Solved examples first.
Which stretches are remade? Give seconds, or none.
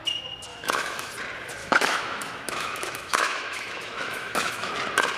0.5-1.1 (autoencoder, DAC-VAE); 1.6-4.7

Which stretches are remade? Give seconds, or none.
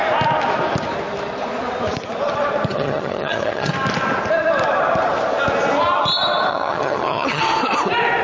2.7-3.7 (vocoder, HiFi-GAN); 6.5-7.4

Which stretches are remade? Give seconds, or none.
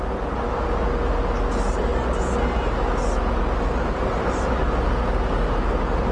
none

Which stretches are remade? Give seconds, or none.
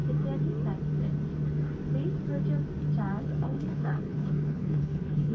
3.2-5.3 (codec, HILCodec)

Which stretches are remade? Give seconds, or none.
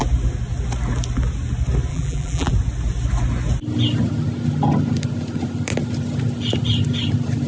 1.9-2.5 (vocoder, BigVGAN v2)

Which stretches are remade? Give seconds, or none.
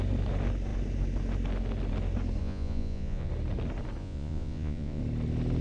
2.4-3.3 (vocoder, Vocos); 4.0-5.0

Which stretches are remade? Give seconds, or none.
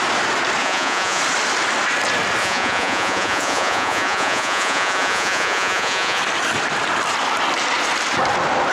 0.6-1.2 (vocoder, Vocos); 2.4-6.2